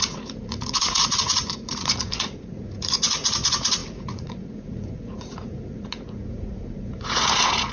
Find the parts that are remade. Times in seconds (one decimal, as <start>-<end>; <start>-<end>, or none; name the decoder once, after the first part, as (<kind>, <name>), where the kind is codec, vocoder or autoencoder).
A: 0.0-7.7 (vocoder, Vocos)